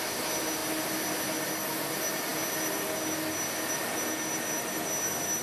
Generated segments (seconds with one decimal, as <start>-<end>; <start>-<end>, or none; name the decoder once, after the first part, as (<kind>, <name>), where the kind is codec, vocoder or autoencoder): none